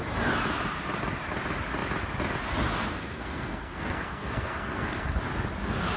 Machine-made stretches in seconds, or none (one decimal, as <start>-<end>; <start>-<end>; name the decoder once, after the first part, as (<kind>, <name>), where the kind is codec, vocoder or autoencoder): 2.9-5.2 (codec, SNAC)